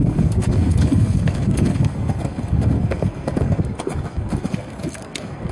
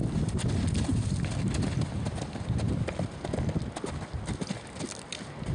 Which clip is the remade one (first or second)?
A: first